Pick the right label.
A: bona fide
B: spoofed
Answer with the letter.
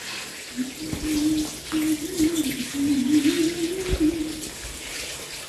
A